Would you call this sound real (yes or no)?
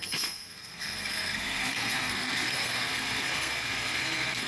no